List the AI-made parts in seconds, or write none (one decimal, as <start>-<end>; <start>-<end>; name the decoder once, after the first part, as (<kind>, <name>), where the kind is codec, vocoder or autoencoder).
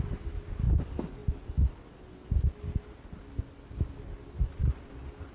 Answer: none